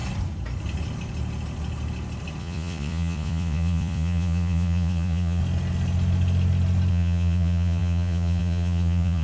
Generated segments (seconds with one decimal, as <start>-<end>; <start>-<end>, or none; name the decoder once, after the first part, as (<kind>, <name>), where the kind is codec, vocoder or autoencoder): 2.4-5.4 (vocoder, Vocos); 6.9-9.2